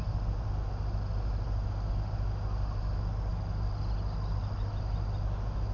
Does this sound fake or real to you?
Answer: real